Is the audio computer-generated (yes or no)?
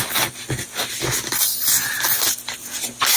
no